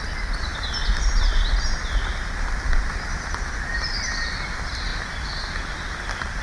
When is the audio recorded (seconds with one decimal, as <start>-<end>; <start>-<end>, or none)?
0.0-6.4